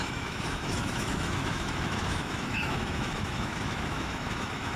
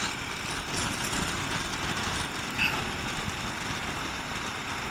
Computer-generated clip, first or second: first